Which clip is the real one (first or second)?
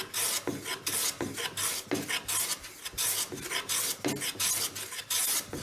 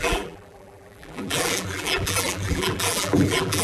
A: first